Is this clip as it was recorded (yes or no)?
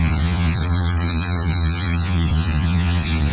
no